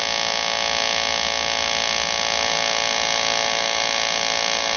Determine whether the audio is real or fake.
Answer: real